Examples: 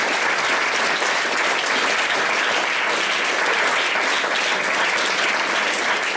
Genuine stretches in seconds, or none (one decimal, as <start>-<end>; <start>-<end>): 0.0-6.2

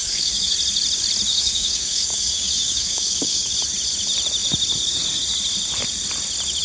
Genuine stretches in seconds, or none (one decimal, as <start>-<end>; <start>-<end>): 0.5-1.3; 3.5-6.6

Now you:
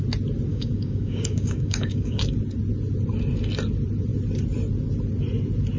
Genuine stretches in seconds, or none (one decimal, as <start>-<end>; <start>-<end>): 0.0-0.5; 2.2-5.8

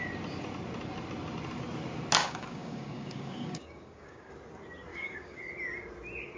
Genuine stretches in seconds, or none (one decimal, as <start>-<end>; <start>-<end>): 0.0-2.2; 4.3-4.9; 5.4-6.4

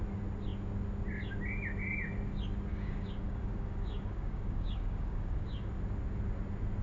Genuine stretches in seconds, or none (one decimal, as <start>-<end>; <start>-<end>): 0.0-2.7; 5.7-6.8

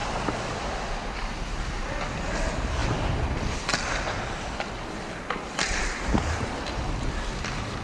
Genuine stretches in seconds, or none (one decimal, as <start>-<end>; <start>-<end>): 0.0-7.8